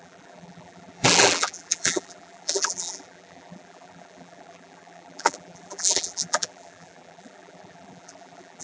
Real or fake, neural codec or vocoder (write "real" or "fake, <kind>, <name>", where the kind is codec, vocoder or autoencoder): fake, vocoder, BigVGAN v2